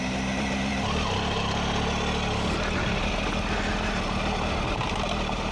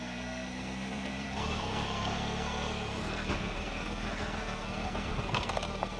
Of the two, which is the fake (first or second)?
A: second